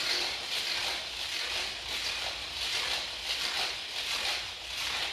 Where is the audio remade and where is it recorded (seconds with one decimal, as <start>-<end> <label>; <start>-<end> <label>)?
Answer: 0.0-0.8 recorded; 0.8-3.9 remade; 3.9-5.1 recorded